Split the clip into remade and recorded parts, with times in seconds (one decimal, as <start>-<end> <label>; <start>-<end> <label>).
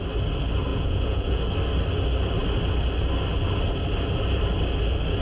0.0-0.7 recorded; 0.7-1.4 remade; 1.4-5.2 recorded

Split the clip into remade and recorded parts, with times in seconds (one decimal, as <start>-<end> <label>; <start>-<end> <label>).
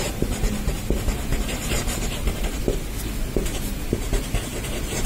0.0-1.3 recorded; 1.3-2.6 remade; 2.6-5.1 recorded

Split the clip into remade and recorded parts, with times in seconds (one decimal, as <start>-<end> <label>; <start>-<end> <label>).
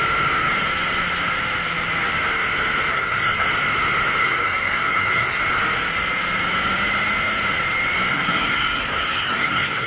0.0-2.9 recorded; 2.9-3.5 remade; 3.5-4.2 recorded; 4.2-5.4 remade; 5.4-8.1 recorded; 8.1-9.9 remade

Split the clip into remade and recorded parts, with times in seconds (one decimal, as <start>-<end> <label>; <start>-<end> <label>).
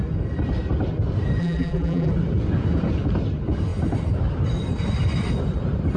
0.0-1.4 recorded; 1.4-2.1 remade; 2.1-6.0 recorded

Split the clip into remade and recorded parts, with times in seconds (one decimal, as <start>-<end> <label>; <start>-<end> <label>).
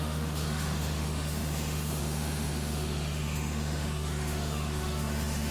0.0-5.5 remade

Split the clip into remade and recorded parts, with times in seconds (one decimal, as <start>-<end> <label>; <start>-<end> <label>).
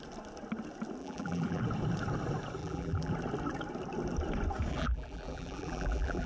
0.0-1.0 recorded; 1.0-1.6 remade; 1.6-2.6 recorded; 2.6-3.1 remade; 3.1-4.7 recorded; 4.7-6.3 remade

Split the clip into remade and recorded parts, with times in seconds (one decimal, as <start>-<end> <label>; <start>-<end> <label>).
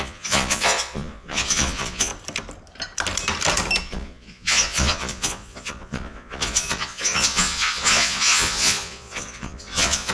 0.0-2.1 remade; 2.1-3.8 recorded; 3.8-10.1 remade